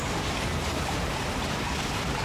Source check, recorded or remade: remade